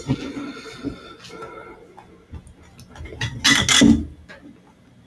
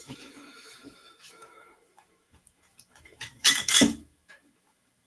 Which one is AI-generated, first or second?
second